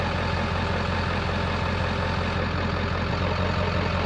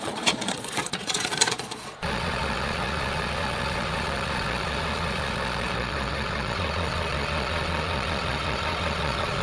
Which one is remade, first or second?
second